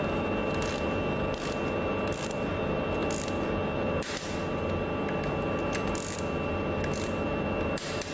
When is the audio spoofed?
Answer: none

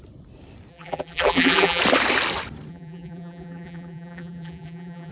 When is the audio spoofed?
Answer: 0.7-1.8 (vocoder, BigVGAN v2); 2.7-5.1